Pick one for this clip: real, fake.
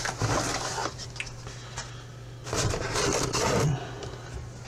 real